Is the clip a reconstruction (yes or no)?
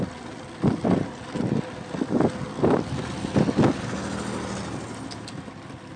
no